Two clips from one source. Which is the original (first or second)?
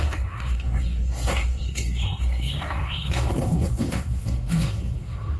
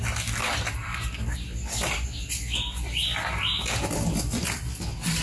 second